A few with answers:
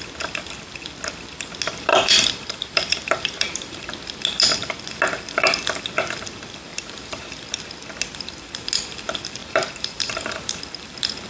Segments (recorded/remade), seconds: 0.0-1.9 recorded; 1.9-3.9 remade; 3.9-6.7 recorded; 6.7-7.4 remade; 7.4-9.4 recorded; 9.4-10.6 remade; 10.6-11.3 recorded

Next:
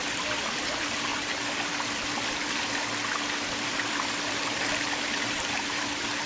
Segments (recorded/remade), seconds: 0.0-1.1 remade; 1.1-3.9 recorded; 3.9-6.3 remade

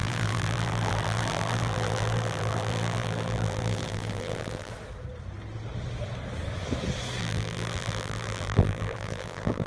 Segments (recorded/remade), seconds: 0.0-4.7 remade; 4.7-7.2 recorded; 7.2-9.7 remade

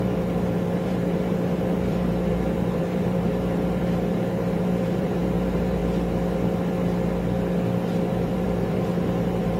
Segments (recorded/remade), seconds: 0.0-5.8 remade; 5.8-8.1 recorded; 8.1-9.6 remade

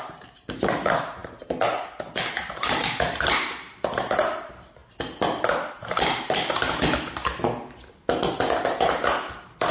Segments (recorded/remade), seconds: 0.0-4.8 remade; 4.8-5.7 recorded; 5.7-7.3 remade; 7.3-8.3 recorded; 8.3-9.7 remade

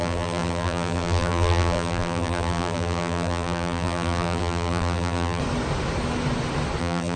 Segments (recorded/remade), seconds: 0.0-5.4 remade; 5.4-6.8 recorded; 6.8-7.2 remade

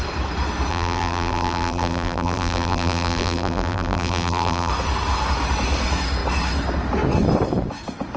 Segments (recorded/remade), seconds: 0.0-0.7 recorded; 0.7-4.7 remade; 4.7-8.2 recorded